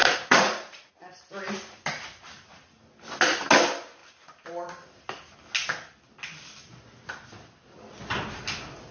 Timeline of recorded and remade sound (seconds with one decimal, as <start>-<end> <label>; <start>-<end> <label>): 0.0-0.9 remade; 0.9-8.9 recorded